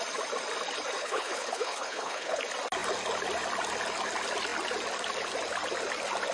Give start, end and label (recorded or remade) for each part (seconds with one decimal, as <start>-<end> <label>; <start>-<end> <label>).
0.0-1.0 recorded; 1.0-2.4 remade; 2.4-6.3 recorded